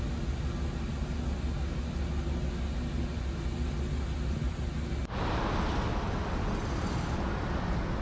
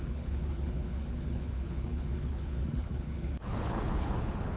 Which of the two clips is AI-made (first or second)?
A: second